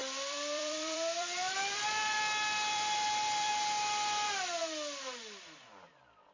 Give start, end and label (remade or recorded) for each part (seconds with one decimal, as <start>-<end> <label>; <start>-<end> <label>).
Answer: 0.0-2.2 remade; 2.2-2.7 recorded; 2.7-3.5 remade; 3.5-6.3 recorded